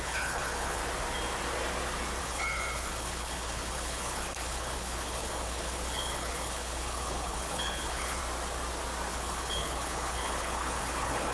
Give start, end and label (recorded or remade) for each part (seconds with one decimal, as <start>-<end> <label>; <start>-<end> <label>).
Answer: 0.0-0.8 remade; 0.8-2.2 recorded; 2.2-8.2 remade; 8.2-9.1 recorded; 9.1-11.3 remade